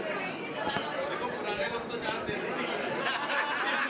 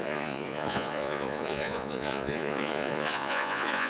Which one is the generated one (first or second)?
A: second